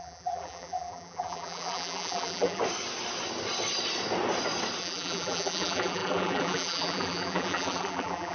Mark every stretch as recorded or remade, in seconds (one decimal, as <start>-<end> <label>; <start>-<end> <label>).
0.0-2.6 remade; 2.6-4.8 recorded; 4.8-8.3 remade